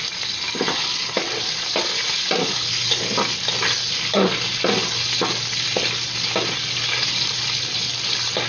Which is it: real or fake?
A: real